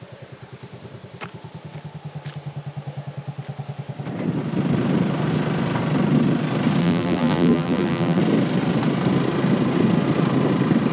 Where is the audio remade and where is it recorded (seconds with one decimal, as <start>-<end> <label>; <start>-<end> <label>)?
0.0-6.8 recorded; 6.8-8.2 remade; 8.2-10.9 recorded